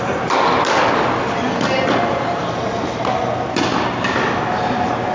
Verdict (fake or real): real